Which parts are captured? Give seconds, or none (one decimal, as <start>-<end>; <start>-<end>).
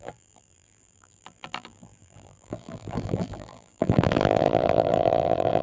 none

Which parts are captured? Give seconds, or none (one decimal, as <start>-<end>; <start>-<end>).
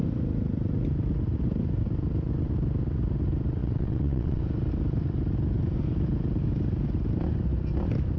0.0-3.6; 4.4-8.2